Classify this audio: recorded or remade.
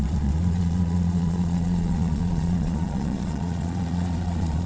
remade